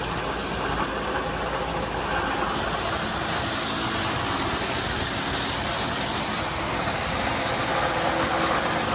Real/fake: real